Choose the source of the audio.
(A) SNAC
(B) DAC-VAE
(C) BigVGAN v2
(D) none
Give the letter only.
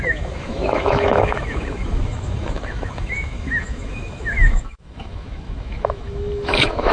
B